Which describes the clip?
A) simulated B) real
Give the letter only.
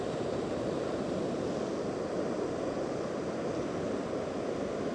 B